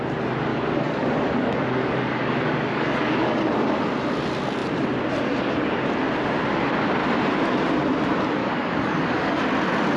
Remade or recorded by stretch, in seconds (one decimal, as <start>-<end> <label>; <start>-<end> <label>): 0.0-0.5 recorded; 0.5-3.8 remade; 3.8-8.4 recorded; 8.4-9.4 remade; 9.4-10.0 recorded

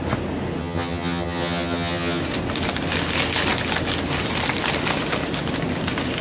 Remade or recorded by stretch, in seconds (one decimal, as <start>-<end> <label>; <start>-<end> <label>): 0.0-0.6 recorded; 0.6-2.2 remade; 2.2-6.2 recorded

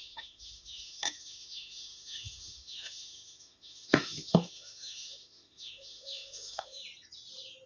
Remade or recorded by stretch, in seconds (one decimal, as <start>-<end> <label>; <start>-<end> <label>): 0.0-6.8 remade; 6.8-7.7 recorded

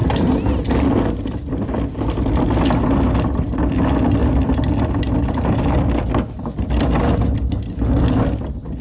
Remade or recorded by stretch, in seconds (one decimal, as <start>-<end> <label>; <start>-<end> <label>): 0.0-8.8 recorded

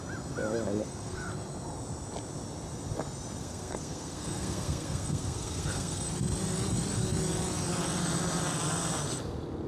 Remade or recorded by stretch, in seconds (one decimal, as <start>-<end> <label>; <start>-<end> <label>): 0.0-0.8 recorded; 0.8-1.3 remade; 1.3-3.4 recorded; 3.4-6.1 remade; 6.1-9.7 recorded

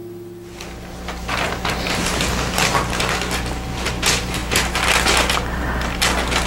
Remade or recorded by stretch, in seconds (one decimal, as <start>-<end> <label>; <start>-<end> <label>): 0.0-6.5 recorded